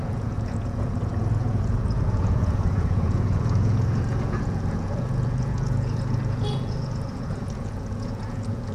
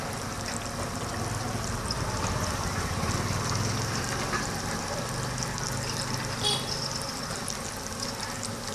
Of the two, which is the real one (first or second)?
second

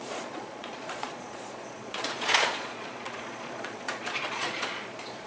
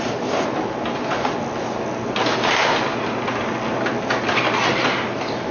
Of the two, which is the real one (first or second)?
second